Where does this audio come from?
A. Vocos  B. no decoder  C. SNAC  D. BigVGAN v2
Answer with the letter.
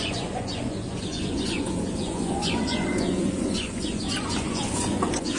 A